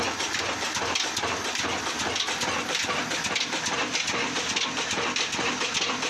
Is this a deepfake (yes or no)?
no